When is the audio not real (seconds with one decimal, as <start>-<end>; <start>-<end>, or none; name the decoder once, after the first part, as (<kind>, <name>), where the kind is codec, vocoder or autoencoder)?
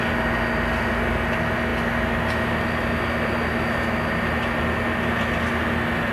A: none